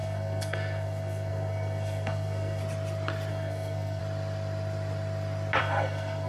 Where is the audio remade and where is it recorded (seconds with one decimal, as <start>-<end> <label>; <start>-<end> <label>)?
0.0-2.6 remade; 2.6-3.3 recorded; 3.3-4.0 remade; 4.0-5.6 recorded; 5.6-6.3 remade